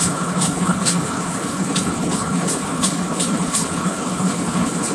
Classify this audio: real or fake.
fake